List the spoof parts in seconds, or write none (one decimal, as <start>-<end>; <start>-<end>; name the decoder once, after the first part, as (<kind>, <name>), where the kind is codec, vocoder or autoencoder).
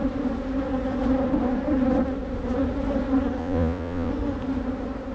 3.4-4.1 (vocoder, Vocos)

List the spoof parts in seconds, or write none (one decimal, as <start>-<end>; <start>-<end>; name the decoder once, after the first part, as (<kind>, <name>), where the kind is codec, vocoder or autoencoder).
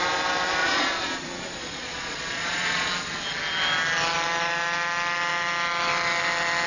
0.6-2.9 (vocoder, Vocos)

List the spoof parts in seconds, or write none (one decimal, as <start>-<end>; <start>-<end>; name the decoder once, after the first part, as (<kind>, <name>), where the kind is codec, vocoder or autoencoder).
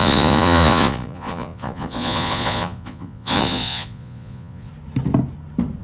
0.0-4.7 (vocoder, Vocos)